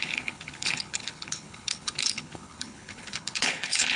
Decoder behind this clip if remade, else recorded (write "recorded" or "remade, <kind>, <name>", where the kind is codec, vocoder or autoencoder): remade, codec, HILCodec